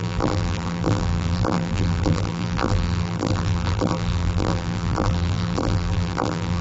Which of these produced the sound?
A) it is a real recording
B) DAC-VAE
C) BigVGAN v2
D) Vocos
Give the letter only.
C